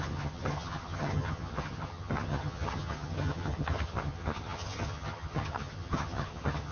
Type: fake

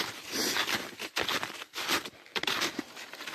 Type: real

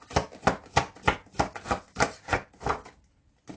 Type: real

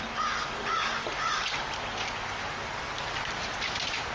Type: real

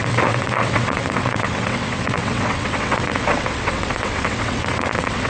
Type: fake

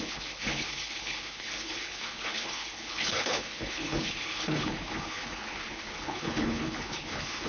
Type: fake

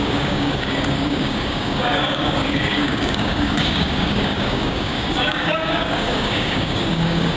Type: fake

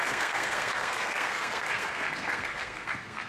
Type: fake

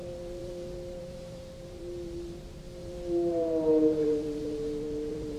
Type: fake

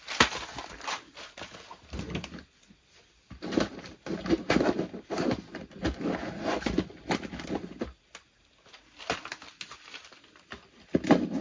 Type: real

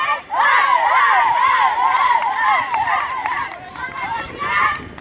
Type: real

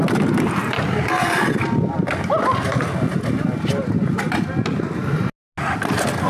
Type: real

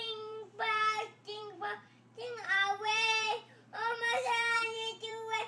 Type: fake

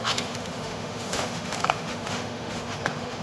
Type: fake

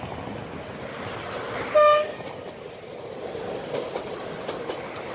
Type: real